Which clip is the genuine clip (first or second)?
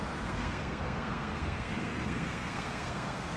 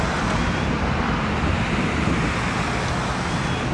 second